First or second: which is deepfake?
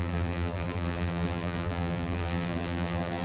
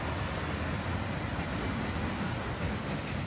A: first